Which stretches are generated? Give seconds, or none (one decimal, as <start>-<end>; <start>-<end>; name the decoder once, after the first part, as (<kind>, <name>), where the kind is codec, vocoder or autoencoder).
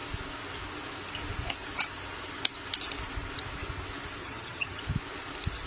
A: 4.2-4.8 (vocoder, HiFi-GAN)